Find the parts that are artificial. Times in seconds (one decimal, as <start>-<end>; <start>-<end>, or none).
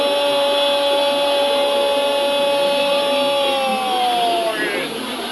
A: none